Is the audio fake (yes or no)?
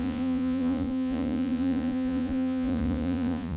yes